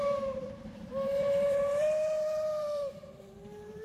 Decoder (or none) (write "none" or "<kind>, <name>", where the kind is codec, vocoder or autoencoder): vocoder, BigVGAN v2